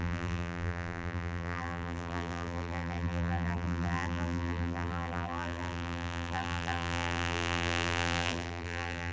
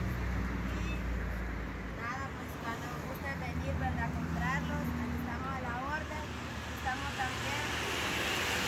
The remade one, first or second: first